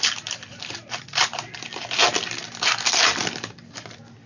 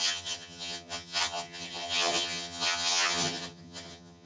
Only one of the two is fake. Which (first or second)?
second